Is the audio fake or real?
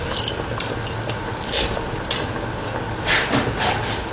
real